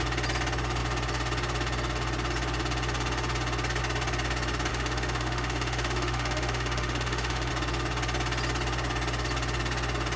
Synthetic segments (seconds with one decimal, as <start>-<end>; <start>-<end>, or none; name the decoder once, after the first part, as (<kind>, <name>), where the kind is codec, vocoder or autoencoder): 4.7-7.5 (autoencoder, DAC-VAE)